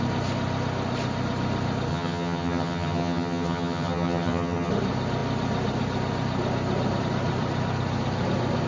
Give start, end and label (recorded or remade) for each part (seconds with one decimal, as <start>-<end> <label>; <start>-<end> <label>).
0.0-1.9 recorded; 1.9-4.7 remade; 4.7-8.7 recorded